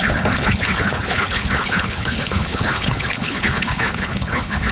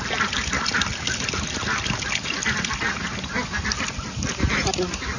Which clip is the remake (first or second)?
first